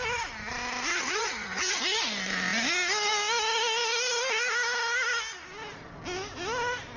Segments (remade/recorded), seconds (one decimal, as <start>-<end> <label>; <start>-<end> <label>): 0.0-0.9 recorded; 0.9-1.8 remade; 1.8-7.0 recorded

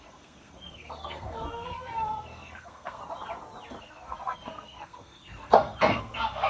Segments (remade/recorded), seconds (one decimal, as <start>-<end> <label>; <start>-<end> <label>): 0.0-3.0 remade; 3.0-3.8 recorded; 3.8-6.5 remade

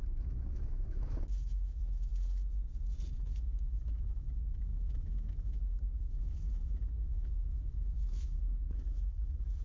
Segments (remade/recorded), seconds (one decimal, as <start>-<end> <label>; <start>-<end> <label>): 0.0-2.1 remade; 2.1-3.1 recorded; 3.1-9.6 remade

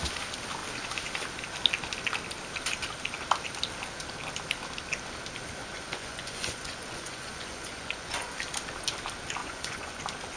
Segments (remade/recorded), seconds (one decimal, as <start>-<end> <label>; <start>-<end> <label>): 0.0-5.6 recorded; 5.6-8.3 remade; 8.3-9.4 recorded; 9.4-10.0 remade; 10.0-10.4 recorded